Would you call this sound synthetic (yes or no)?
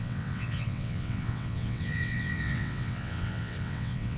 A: yes